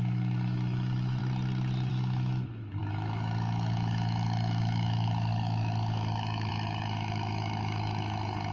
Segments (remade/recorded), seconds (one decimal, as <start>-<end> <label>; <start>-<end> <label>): 0.0-1.2 remade; 1.2-1.9 recorded; 1.9-8.5 remade